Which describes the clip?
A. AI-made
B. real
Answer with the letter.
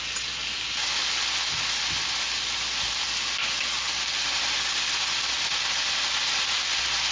B